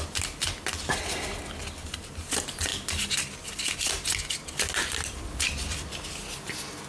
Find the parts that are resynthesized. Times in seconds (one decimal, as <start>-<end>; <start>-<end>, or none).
none

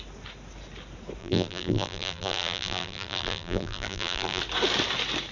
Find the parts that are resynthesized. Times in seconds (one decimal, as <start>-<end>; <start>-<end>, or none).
1.2-4.4

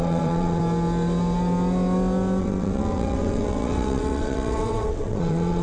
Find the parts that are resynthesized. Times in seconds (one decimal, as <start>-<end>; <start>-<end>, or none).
0.0-0.6; 2.4-5.6

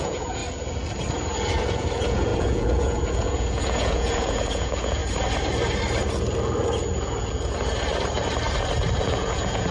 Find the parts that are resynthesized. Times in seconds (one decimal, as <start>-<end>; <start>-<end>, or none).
0.0-0.4; 1.5-5.0; 9.0-9.7

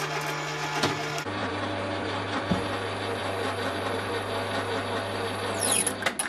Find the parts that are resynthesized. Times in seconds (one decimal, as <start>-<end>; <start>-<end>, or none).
1.4-2.7; 3.2-4.1

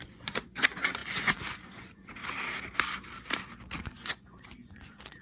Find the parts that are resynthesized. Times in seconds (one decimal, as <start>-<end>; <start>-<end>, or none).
0.0-2.2; 3.8-5.2

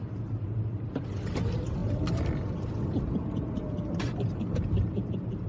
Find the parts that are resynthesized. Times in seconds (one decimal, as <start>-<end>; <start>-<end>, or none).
none